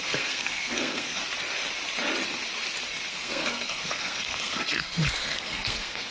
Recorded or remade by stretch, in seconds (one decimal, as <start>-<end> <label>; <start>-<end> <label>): 0.0-1.2 remade; 1.2-3.1 recorded; 3.1-6.1 remade